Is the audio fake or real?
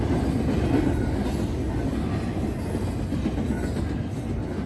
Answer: real